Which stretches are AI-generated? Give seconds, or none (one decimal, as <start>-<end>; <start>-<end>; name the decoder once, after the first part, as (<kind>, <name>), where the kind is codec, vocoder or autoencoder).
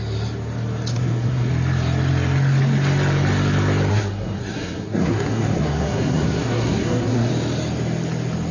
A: 0.9-1.5 (codec, SNAC); 3.9-7.3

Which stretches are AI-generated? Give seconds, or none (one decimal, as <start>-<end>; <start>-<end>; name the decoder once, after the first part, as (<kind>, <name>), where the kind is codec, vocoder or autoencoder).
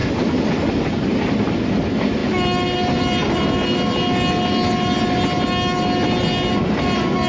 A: none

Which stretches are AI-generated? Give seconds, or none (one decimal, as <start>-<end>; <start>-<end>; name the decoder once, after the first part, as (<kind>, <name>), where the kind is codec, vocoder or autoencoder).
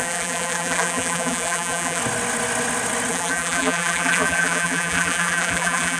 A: 0.0-2.0 (vocoder, BigVGAN v2); 3.1-6.0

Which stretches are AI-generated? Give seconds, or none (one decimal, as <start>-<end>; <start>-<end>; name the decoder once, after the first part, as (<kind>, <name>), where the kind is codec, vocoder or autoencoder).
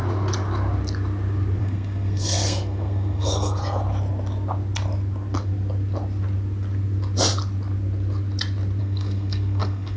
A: 1.6-3.6 (codec, SNAC); 8.8-10.0